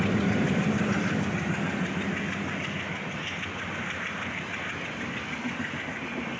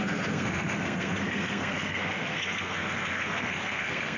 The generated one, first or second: second